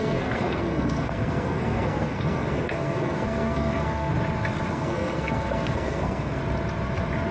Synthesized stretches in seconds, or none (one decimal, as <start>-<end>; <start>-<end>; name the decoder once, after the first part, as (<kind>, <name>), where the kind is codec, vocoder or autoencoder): 0.0-4.1 (codec, SNAC); 4.7-6.4